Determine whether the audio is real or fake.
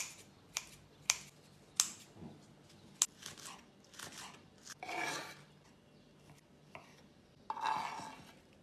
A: real